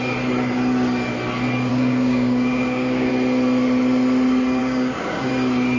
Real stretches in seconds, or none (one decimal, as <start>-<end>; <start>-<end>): 0.0-1.7; 3.1-4.6; 5.3-5.8